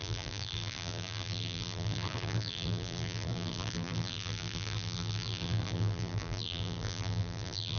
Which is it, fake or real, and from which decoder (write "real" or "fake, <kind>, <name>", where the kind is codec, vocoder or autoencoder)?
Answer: fake, vocoder, BigVGAN v2